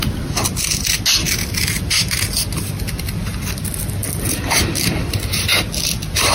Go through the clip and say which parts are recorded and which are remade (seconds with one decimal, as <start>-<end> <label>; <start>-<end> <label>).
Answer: 0.0-6.3 recorded